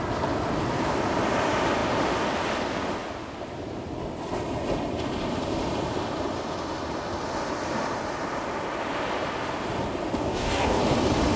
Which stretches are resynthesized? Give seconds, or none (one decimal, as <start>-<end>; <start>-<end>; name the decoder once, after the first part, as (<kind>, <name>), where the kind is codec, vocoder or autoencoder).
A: 10.2-10.8 (codec, DAC)